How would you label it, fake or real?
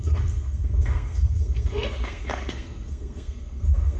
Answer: fake